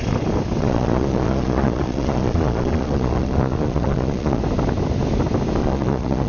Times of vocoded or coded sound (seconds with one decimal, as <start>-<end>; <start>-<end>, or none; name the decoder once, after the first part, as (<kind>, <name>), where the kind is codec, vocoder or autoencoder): 0.6-4.4 (vocoder, Vocos); 5.6-6.3